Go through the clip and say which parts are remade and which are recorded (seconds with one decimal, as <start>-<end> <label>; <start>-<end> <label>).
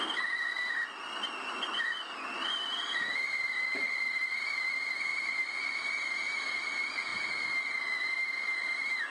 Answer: 0.0-5.1 recorded; 5.1-5.8 remade; 5.8-9.1 recorded